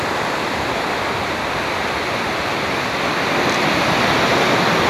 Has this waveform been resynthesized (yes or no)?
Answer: no